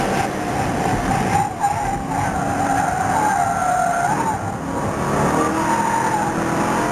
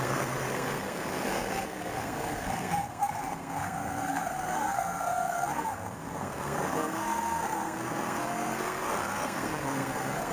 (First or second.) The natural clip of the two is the first